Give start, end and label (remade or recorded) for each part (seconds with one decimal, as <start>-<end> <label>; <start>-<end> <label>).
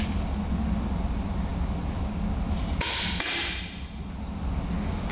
0.0-5.1 recorded